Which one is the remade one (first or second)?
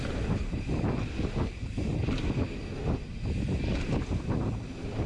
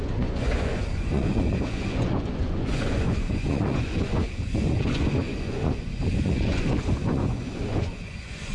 second